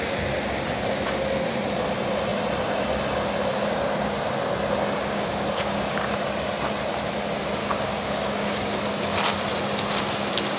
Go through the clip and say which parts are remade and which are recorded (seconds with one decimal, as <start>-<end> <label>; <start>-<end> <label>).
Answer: 0.0-5.0 recorded; 5.0-6.1 remade; 6.1-7.6 recorded; 7.6-8.8 remade; 8.8-10.6 recorded